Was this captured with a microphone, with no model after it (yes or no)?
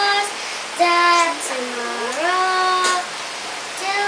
yes